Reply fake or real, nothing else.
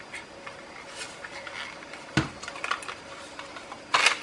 real